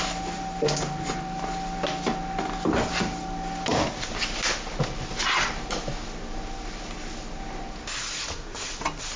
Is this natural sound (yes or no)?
yes